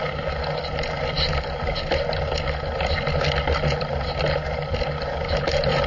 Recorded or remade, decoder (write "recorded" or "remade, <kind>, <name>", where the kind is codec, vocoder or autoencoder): recorded